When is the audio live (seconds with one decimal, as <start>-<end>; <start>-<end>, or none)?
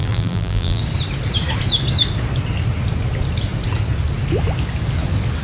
0.8-5.4